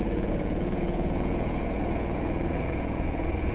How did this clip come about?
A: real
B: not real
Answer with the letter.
B